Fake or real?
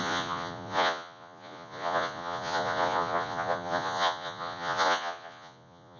fake